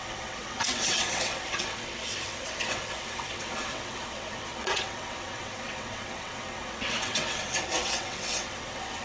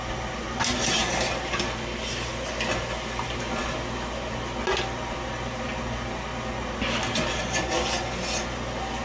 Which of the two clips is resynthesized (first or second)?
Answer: first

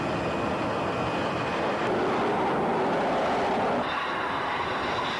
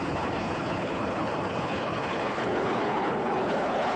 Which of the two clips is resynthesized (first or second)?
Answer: second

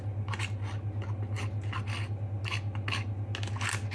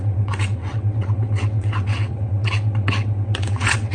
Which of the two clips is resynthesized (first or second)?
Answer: second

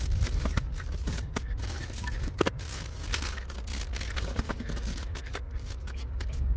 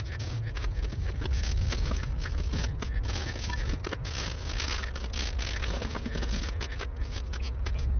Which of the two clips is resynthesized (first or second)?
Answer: first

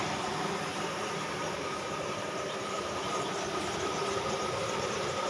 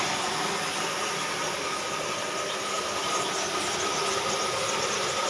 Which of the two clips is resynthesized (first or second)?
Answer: first